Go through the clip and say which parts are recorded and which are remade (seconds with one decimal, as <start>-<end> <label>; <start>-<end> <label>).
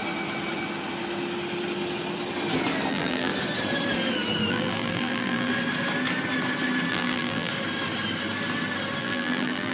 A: 0.0-2.9 recorded; 2.9-3.3 remade; 3.3-4.5 recorded; 4.5-5.5 remade; 5.5-6.9 recorded; 6.9-7.5 remade; 7.5-9.0 recorded; 9.0-9.7 remade